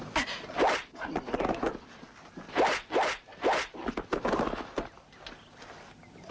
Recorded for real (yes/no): yes